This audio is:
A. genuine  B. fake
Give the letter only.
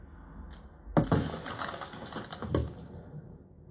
A